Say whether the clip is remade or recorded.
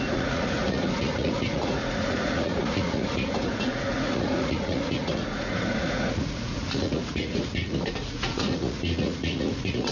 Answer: remade